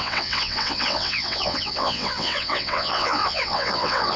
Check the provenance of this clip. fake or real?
fake